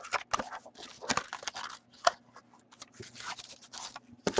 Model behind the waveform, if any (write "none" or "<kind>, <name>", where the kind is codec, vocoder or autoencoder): none